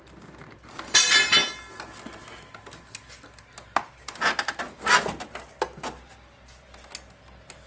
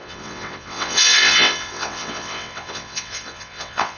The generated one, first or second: second